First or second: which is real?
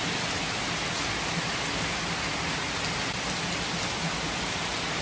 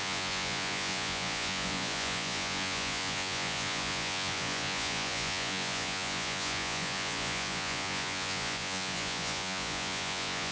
first